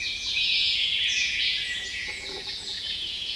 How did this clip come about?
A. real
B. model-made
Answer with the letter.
B